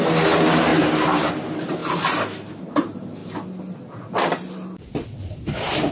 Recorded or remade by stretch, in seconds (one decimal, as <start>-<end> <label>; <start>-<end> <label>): 0.0-3.2 remade; 3.2-5.4 recorded; 5.4-5.9 remade